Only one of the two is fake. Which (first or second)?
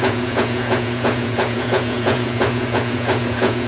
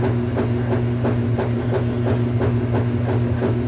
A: first